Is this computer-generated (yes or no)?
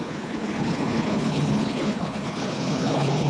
yes